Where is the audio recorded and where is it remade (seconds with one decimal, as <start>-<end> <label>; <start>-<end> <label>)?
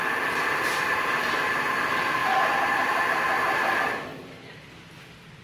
0.0-2.2 recorded; 2.2-3.1 remade; 3.1-4.1 recorded; 4.1-4.7 remade; 4.7-5.4 recorded